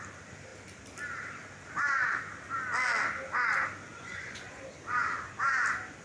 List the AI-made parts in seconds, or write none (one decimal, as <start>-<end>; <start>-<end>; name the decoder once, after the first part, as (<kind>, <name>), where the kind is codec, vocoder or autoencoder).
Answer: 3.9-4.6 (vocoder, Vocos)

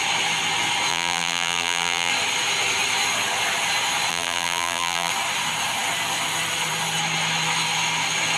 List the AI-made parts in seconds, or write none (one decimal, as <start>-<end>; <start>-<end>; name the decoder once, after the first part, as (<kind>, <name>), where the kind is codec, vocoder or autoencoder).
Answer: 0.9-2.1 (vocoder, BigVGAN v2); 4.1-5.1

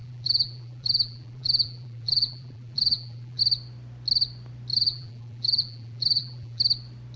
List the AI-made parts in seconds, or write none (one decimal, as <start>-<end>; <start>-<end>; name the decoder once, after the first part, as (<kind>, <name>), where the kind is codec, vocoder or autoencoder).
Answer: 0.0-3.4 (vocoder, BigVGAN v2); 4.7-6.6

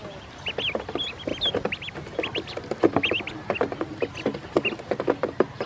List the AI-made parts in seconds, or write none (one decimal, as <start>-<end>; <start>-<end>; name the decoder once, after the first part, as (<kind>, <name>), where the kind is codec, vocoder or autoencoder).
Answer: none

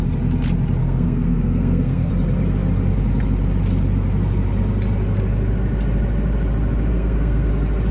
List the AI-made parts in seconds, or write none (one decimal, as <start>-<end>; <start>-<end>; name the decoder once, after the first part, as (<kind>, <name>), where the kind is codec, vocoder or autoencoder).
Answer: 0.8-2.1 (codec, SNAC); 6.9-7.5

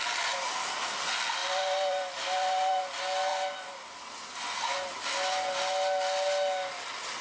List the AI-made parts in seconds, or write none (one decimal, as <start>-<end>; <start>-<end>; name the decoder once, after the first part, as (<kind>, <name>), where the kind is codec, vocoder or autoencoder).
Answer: 1.4-2.8 (vocoder, BigVGAN v2); 3.3-4.0

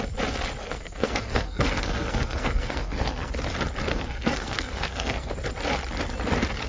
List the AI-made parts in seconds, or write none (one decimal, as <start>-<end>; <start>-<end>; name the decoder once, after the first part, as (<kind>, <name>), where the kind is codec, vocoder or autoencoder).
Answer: 0.6-3.3 (codec, SNAC); 3.9-5.3

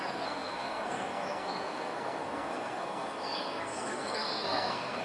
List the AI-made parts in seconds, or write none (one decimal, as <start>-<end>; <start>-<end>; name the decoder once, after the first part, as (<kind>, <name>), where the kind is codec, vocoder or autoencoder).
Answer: 0.0-5.0 (codec, SNAC)